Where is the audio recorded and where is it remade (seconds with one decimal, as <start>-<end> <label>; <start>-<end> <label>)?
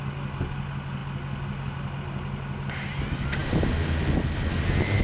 0.0-5.0 recorded